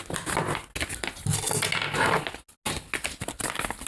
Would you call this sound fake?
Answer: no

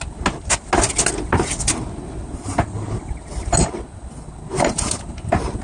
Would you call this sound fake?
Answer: no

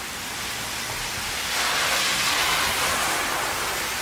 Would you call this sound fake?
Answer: no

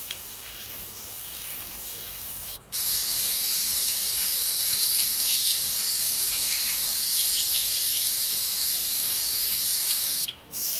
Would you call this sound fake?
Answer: yes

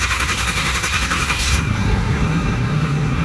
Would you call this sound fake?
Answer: yes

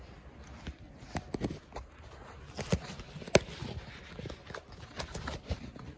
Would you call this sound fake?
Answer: no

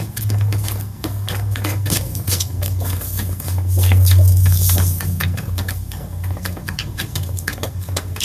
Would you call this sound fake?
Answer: yes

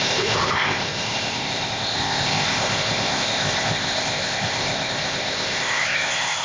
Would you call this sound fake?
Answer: yes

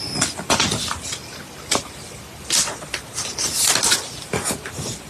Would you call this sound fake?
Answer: no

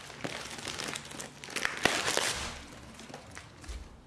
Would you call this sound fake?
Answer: no